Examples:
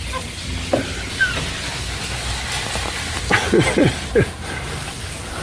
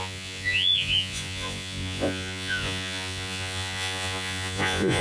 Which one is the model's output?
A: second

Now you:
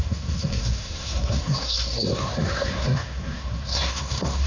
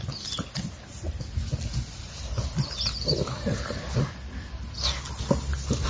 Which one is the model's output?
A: first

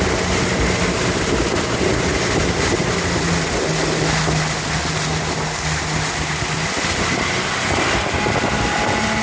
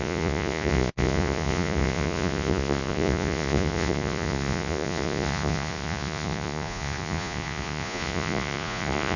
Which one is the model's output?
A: second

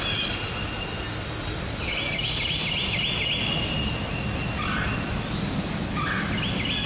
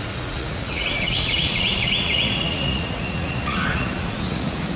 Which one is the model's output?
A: second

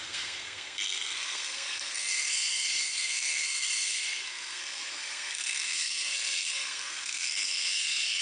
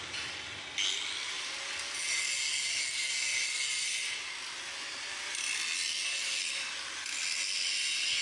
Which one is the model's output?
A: first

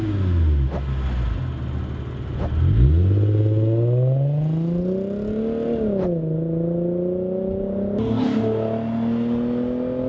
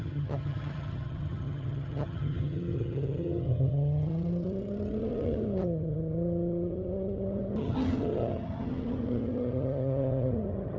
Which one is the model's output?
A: second